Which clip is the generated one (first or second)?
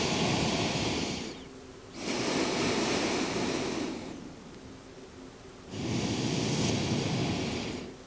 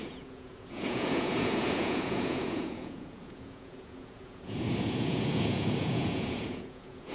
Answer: second